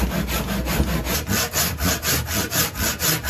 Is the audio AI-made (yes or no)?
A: no